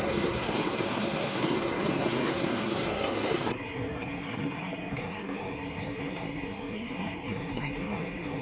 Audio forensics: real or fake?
fake